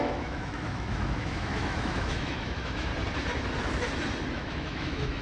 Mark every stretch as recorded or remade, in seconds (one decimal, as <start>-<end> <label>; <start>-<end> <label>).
0.0-2.9 remade; 2.9-4.3 recorded; 4.3-5.2 remade